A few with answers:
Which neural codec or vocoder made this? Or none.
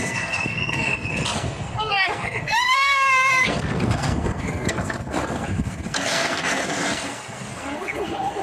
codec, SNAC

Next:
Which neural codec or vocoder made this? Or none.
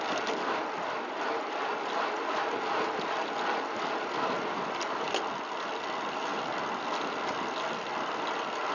none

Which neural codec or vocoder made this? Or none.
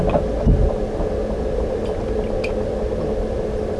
none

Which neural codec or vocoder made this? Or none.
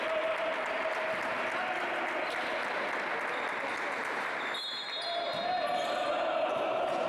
none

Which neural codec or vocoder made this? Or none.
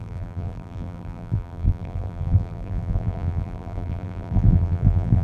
vocoder, BigVGAN v2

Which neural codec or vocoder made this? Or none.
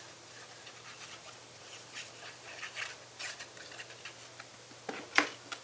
none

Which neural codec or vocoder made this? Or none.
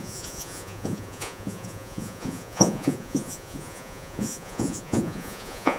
vocoder, Vocos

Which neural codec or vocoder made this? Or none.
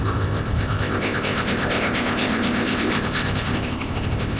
codec, ZipCodec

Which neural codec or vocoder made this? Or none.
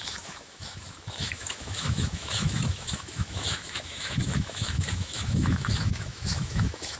autoencoder, DAC-VAE